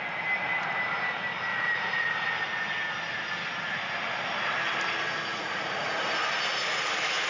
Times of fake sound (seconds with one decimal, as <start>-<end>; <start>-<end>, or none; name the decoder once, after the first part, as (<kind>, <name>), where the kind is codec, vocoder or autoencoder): 1.5-2.3 (vocoder, Vocos); 5.3-6.0